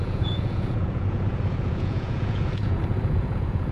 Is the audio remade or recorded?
remade